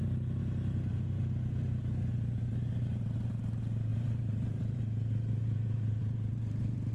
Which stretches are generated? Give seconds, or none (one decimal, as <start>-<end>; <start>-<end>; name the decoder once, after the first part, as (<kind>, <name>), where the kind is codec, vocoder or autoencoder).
3.9-6.9 (vocoder, BigVGAN v2)